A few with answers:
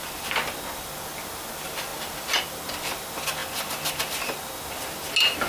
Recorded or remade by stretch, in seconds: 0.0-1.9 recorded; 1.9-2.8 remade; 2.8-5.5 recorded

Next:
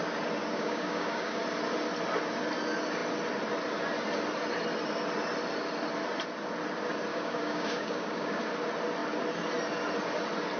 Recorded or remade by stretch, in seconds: 0.0-0.4 recorded; 0.4-1.4 remade; 1.4-7.1 recorded; 7.1-8.5 remade; 8.5-10.6 recorded

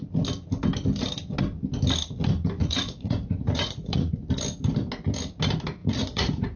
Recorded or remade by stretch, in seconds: 0.0-2.6 recorded; 2.6-4.1 remade; 4.1-5.8 recorded; 5.8-6.6 remade

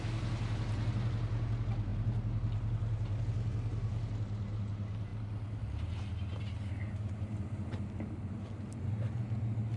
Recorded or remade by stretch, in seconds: 0.0-9.8 recorded

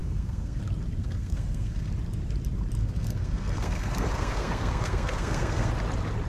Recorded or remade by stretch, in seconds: 0.0-0.6 remade; 0.6-1.0 recorded; 1.0-1.9 remade; 1.9-2.8 recorded; 2.8-5.7 remade; 5.7-6.3 recorded

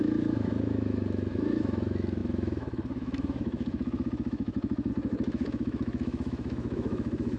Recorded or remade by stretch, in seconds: 0.0-7.4 remade

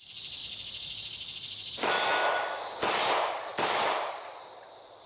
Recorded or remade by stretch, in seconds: 0.0-0.4 remade; 0.4-3.1 recorded; 3.1-5.1 remade